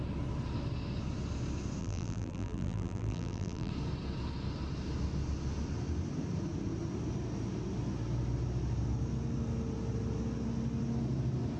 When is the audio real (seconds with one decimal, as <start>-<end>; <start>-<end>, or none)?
0.0-1.8; 3.7-11.6